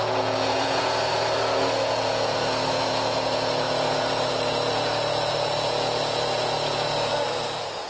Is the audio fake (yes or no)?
yes